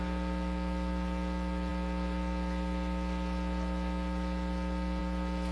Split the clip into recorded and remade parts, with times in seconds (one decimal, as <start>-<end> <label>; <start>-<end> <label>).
0.0-5.5 recorded